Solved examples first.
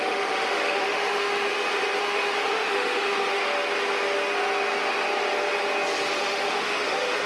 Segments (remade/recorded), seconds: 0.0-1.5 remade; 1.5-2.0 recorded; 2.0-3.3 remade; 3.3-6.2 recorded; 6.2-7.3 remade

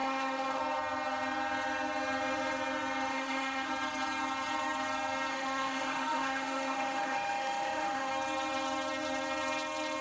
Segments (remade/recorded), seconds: 0.0-0.6 remade; 0.6-3.1 recorded; 3.1-3.7 remade; 3.7-5.3 recorded; 5.3-8.1 remade; 8.1-10.0 recorded

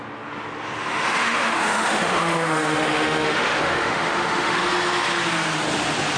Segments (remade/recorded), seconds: 0.0-0.9 recorded; 0.9-4.6 remade; 4.6-6.2 recorded

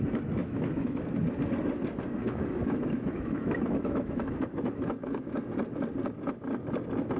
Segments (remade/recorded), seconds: 0.0-0.4 recorded; 0.4-1.0 remade; 1.0-2.2 recorded; 2.2-5.3 remade; 5.3-7.2 recorded

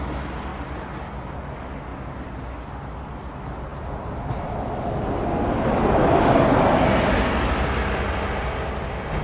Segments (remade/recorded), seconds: 0.0-9.2 recorded

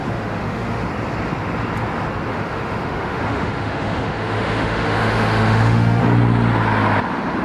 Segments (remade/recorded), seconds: 0.0-0.9 remade; 0.9-2.3 recorded; 2.3-6.0 remade; 6.0-7.4 recorded